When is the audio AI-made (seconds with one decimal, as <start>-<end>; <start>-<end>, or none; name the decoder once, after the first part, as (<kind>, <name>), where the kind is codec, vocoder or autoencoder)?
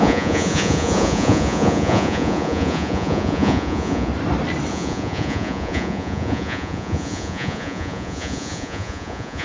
0.0-4.1 (vocoder, Vocos); 4.7-9.4